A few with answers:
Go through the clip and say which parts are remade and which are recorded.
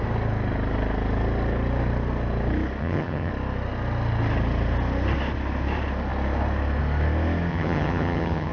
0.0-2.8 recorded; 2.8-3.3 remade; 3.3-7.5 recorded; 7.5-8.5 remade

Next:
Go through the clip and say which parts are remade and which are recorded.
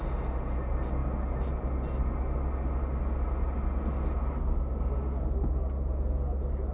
0.0-6.7 recorded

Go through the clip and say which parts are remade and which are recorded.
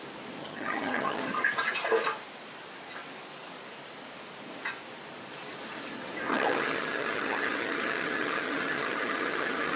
0.0-0.4 recorded; 0.4-1.2 remade; 1.2-6.3 recorded; 6.3-9.8 remade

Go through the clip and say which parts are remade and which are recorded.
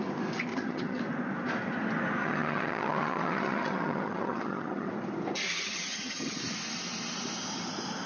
0.0-0.5 recorded; 0.5-1.0 remade; 1.0-2.2 recorded; 2.2-4.9 remade; 4.9-5.4 recorded; 5.4-6.4 remade; 6.4-8.1 recorded